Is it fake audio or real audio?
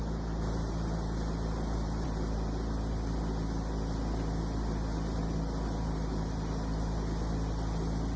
real